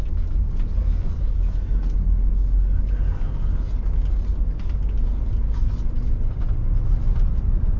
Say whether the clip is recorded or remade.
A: recorded